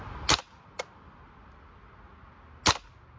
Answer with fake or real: real